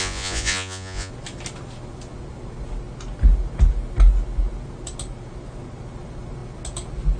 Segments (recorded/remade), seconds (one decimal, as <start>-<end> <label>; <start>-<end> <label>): 0.0-1.1 remade; 1.1-7.2 recorded